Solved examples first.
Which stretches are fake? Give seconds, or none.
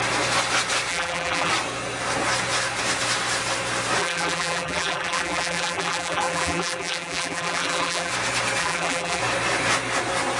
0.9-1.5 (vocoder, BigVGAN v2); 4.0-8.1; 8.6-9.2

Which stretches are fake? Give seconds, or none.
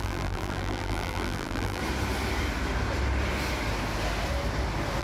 0.0-1.8 (vocoder, BigVGAN v2)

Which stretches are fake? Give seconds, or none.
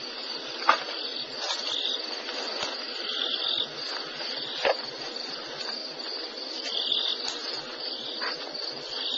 0.0-9.2 (vocoder, BigVGAN v2)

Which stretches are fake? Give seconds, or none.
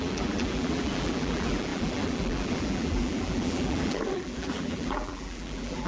0.0-5.9 (vocoder, BigVGAN v2)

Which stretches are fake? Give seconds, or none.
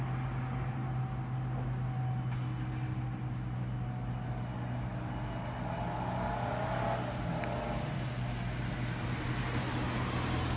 none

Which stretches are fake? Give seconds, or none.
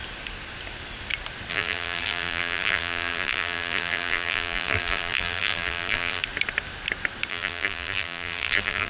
1.5-6.2 (vocoder, BigVGAN v2); 7.3-8.9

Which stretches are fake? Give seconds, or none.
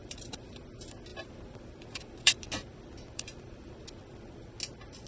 0.0-0.7 (vocoder, BigVGAN v2); 1.1-4.2